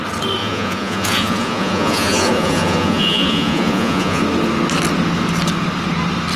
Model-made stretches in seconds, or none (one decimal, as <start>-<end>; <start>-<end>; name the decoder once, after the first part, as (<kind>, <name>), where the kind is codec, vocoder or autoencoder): 0.4-4.2 (vocoder, Vocos)